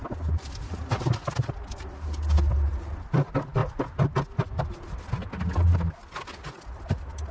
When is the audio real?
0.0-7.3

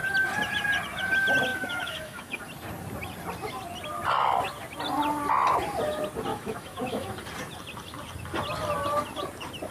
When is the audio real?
0.0-1.5; 2.4-6.3; 7.1-9.7

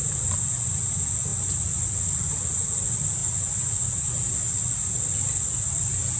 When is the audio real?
0.0-6.2

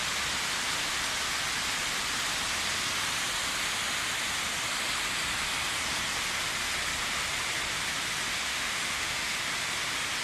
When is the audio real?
0.0-8.5; 9.3-10.2